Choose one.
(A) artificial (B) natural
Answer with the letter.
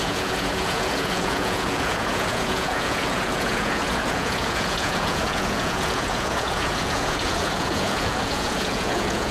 A